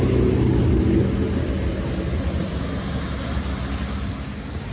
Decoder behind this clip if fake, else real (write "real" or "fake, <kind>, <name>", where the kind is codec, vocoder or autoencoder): real